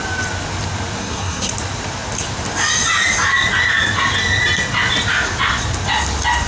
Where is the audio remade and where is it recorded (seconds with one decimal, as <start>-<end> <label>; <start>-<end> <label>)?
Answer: 0.0-1.0 recorded; 1.0-1.5 remade; 1.5-6.5 recorded